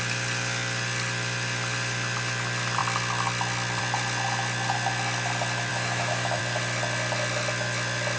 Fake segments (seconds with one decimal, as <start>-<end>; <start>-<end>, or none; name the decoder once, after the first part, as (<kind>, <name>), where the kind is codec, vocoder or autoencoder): 5.7-6.4 (autoencoder, DAC-VAE)